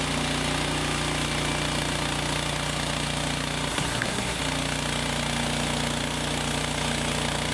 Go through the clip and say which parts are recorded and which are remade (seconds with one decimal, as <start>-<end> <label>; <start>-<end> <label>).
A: 0.0-3.7 recorded; 3.7-4.4 remade; 4.4-7.5 recorded

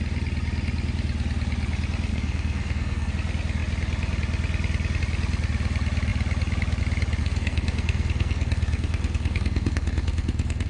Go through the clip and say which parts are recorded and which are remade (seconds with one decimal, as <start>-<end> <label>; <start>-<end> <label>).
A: 0.0-2.1 recorded; 2.1-3.1 remade; 3.1-7.2 recorded; 7.2-10.7 remade